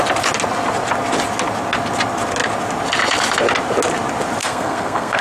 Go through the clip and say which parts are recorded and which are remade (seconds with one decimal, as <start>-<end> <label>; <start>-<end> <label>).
0.0-4.4 recorded; 4.4-5.2 remade